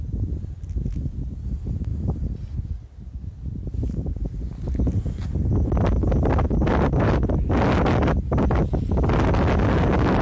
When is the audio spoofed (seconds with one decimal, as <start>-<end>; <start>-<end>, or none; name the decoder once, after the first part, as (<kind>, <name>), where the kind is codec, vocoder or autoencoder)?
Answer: none